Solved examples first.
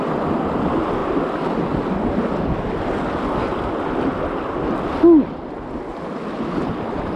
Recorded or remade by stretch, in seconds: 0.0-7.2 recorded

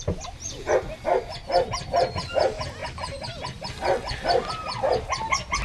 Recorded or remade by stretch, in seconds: 0.0-5.6 recorded